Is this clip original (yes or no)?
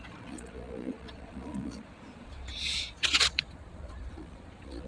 no